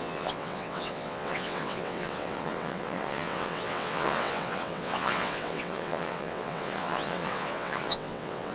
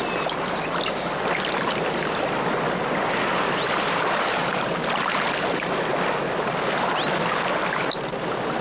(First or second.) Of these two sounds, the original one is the second